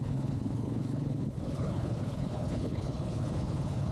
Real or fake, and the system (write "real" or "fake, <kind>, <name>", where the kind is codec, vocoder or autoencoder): fake, codec, HILCodec